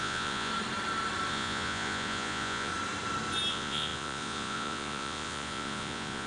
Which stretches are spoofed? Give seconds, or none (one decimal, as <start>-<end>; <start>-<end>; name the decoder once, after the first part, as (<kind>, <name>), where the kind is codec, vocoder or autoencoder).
0.0-0.5 (vocoder, Vocos); 1.3-2.7; 3.5-6.3